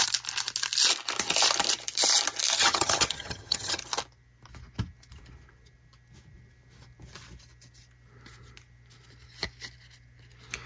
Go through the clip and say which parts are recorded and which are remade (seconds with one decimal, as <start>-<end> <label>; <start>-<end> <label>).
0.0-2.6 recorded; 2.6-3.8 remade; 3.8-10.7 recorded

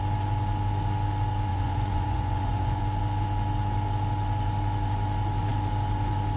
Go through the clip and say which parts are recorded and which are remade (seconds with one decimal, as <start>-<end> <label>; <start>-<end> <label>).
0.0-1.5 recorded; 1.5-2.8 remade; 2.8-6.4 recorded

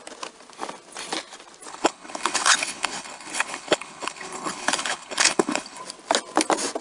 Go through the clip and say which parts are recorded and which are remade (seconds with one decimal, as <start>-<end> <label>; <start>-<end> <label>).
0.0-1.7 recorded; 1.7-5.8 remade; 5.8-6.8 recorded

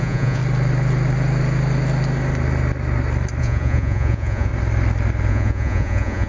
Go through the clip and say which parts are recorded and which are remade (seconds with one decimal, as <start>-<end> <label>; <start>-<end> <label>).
0.0-0.4 remade; 0.4-3.4 recorded; 3.4-4.5 remade; 4.5-5.3 recorded; 5.3-6.3 remade

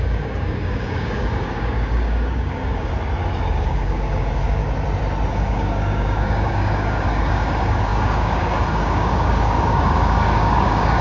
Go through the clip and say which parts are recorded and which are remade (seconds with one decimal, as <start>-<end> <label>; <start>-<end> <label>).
0.0-2.9 remade; 2.9-3.5 recorded; 3.5-4.6 remade; 4.6-5.3 recorded; 5.3-11.0 remade

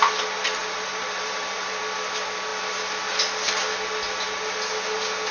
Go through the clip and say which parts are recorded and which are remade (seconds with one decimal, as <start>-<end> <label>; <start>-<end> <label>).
0.0-0.6 recorded; 0.6-1.8 remade; 1.8-5.3 recorded